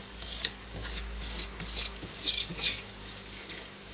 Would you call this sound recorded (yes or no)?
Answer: no